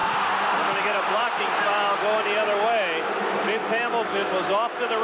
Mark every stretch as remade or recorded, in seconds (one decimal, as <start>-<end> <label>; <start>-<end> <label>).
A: 0.0-5.0 recorded